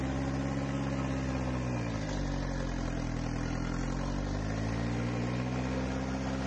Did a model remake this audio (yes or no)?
no